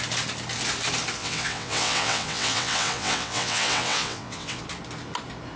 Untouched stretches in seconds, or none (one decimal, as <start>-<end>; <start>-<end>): 0.0-1.2; 4.6-5.6